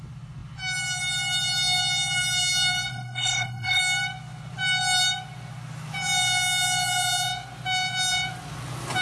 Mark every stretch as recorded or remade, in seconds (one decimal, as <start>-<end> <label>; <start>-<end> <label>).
0.0-2.9 recorded; 2.9-3.8 remade; 3.8-9.0 recorded